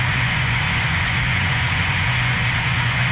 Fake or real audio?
fake